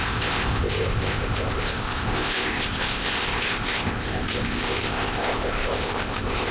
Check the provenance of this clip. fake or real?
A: fake